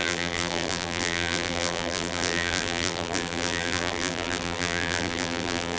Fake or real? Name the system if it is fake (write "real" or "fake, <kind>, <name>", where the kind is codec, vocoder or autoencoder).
fake, vocoder, BigVGAN v2